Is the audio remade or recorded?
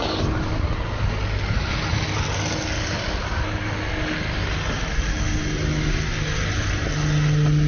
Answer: recorded